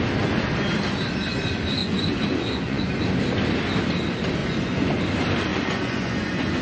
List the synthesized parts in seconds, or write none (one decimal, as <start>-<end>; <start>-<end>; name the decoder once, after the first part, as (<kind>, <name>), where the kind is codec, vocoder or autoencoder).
1.8-2.9 (vocoder, Vocos); 4.4-5.0; 5.5-6.6